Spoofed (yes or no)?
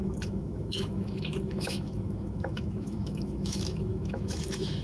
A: yes